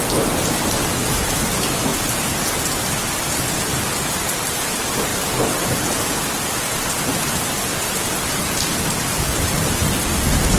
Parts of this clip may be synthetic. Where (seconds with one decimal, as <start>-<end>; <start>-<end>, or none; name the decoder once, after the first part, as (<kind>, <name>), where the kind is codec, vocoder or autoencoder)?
0.0-1.9 (vocoder, BigVGAN v2); 3.1-10.6